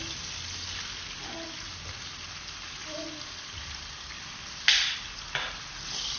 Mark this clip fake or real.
real